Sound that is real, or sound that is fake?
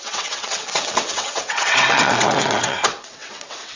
fake